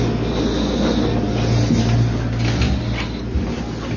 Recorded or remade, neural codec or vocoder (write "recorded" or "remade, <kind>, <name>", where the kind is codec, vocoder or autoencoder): recorded